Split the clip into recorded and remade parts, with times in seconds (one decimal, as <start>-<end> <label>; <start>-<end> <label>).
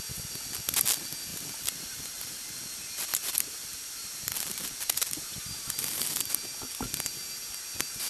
0.0-1.3 recorded; 1.3-2.5 remade; 2.5-3.1 recorded; 3.1-6.3 remade; 6.3-8.1 recorded